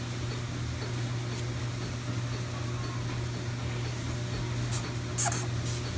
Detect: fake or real real